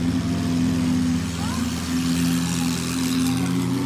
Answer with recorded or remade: recorded